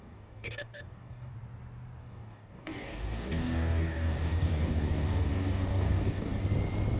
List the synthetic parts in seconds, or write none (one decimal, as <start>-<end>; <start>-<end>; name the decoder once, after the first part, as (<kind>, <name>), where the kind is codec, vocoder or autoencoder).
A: 0.0-1.3 (codec, DAC); 2.0-6.4